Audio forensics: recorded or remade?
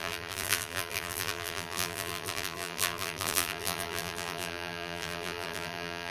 remade